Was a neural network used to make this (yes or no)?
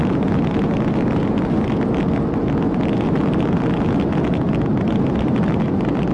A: no